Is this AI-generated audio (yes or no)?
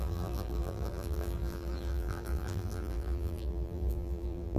yes